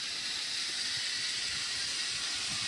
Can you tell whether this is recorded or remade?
recorded